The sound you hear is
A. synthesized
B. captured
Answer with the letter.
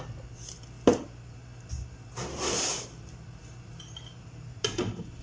A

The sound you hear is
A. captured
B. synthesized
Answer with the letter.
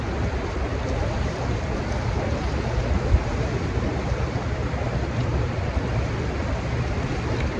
A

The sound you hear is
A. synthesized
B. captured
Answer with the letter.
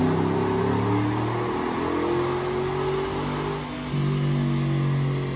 B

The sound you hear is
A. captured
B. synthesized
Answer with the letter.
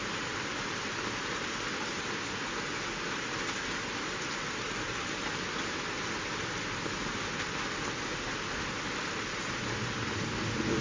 A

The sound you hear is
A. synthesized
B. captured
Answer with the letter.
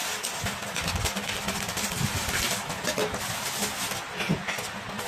B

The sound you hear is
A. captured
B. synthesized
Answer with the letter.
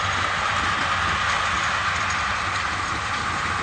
A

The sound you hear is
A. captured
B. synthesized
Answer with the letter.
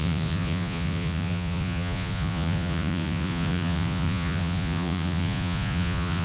B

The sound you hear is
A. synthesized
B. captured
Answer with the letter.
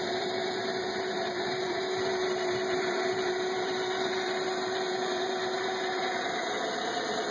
A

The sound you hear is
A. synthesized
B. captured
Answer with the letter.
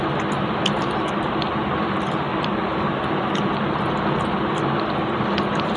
B